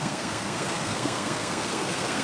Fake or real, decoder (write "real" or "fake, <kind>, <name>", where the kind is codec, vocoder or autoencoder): fake, codec, SNAC